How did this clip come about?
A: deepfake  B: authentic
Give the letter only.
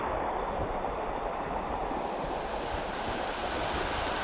B